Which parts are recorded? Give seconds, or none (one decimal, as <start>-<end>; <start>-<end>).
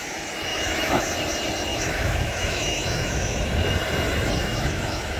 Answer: 0.0-0.5; 1.0-1.7; 3.5-4.4